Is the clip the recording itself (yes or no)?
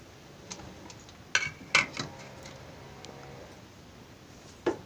yes